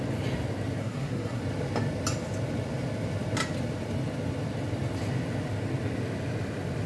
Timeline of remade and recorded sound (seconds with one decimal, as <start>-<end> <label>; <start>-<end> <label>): 0.0-0.8 recorded; 0.8-1.4 remade; 1.4-6.9 recorded